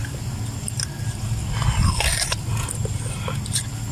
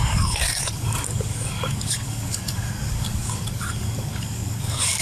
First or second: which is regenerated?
second